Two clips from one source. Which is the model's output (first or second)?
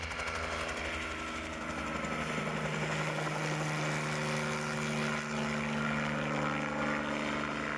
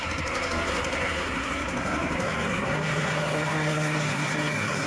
second